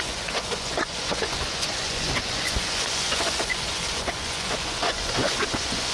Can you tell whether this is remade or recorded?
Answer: remade